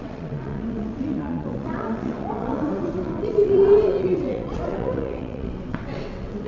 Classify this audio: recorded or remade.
remade